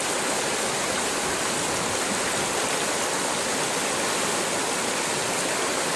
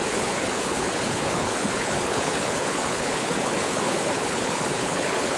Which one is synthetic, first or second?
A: second